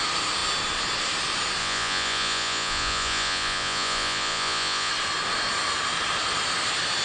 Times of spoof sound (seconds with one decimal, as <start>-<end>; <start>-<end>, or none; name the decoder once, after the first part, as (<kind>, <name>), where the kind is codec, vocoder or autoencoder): 1.6-4.9 (vocoder, Vocos)